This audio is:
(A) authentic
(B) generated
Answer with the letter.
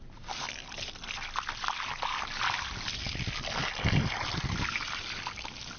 A